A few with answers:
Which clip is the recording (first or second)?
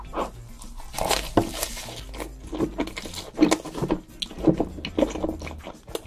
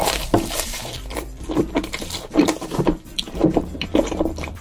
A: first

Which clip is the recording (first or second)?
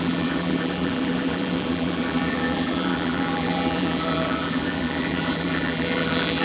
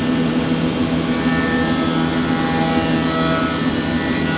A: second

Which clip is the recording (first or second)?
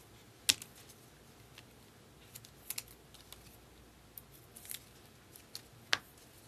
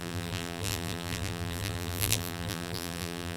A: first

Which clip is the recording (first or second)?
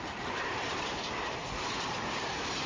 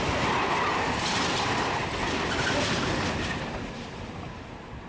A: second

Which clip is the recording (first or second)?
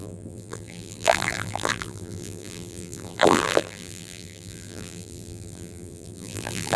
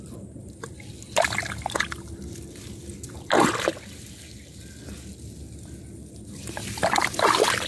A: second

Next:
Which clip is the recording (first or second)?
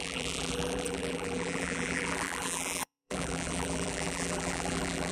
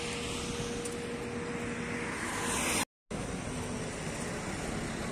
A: second